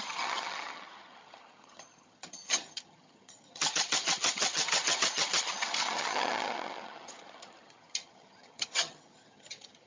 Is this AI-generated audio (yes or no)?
yes